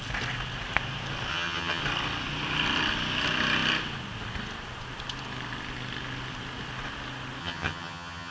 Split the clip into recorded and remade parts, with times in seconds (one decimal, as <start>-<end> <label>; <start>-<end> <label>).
0.0-1.3 recorded; 1.3-1.8 remade; 1.8-7.4 recorded; 7.4-8.3 remade